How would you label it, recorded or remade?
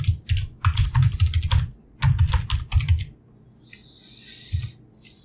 recorded